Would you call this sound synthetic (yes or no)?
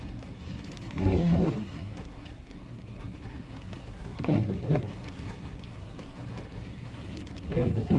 yes